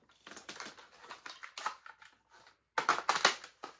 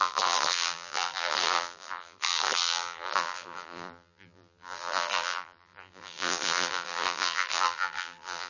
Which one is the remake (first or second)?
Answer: second